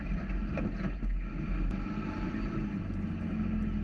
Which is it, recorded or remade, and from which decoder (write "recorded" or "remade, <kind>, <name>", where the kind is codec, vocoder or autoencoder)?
recorded